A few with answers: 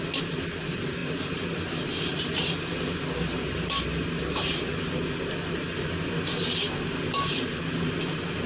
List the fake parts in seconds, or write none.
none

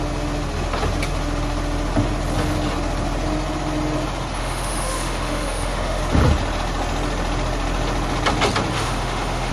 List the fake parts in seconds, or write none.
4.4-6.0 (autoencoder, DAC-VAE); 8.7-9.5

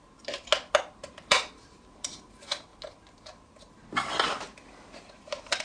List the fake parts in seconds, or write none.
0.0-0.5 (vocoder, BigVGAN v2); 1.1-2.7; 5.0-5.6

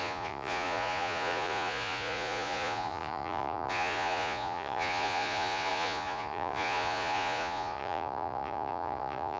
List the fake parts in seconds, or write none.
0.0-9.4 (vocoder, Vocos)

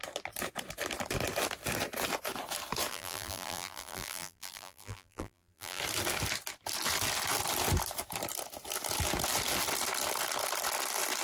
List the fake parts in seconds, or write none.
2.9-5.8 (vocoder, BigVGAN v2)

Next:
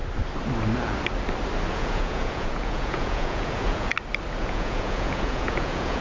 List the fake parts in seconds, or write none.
1.7-3.9 (vocoder, Vocos); 4.4-6.0

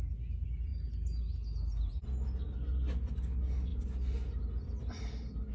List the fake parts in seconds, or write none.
none